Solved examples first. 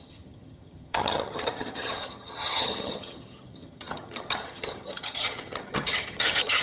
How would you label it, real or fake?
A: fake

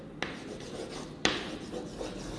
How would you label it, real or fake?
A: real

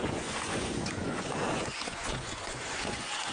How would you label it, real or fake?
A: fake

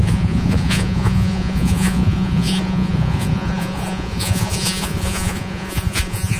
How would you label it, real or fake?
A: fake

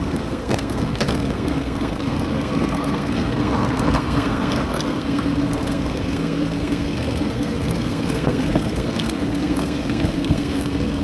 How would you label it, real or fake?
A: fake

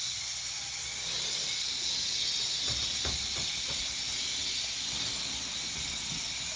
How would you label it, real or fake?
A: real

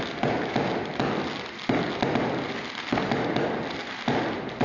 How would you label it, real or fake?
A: real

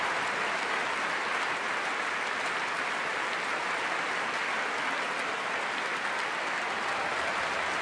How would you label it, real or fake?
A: real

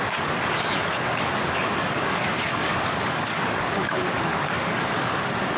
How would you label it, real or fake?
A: fake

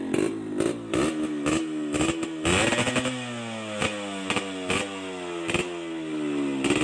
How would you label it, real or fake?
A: real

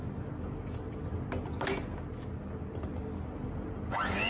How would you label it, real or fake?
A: real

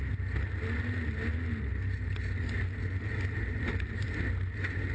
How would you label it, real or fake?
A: real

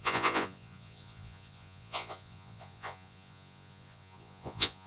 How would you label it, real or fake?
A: fake